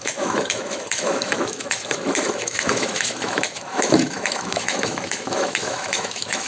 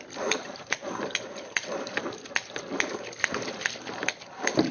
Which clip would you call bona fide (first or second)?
second